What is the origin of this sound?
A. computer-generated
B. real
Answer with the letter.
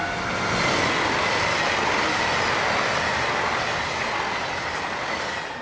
B